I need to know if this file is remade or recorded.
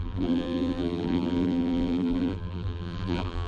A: remade